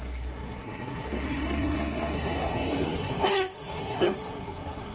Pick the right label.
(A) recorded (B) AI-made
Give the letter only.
B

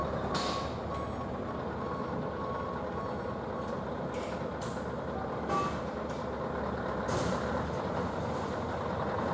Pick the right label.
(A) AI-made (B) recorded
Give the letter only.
B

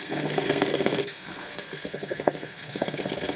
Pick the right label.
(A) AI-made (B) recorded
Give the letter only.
A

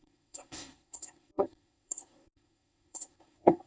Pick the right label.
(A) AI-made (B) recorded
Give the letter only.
A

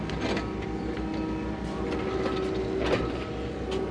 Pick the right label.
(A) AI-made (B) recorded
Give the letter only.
B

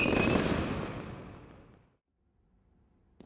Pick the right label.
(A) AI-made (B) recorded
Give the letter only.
B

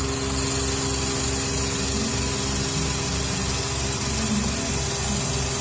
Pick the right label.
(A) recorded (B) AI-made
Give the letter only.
A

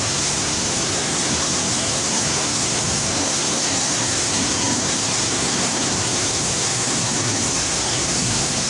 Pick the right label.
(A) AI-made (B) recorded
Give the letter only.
A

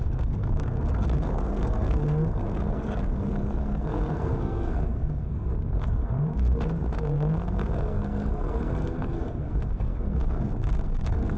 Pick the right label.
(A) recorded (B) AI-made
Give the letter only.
B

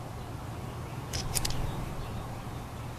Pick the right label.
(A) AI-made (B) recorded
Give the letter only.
B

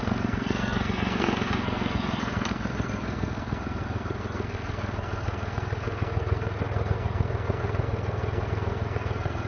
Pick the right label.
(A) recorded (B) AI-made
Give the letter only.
B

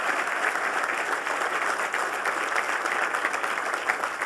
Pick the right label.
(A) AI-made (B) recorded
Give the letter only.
B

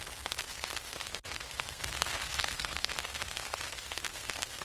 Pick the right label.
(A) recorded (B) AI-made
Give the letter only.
B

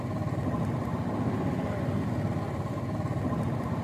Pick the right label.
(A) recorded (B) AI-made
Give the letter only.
A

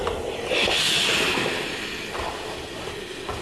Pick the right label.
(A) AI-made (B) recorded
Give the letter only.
B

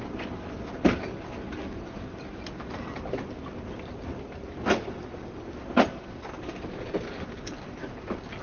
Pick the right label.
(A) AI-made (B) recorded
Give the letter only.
B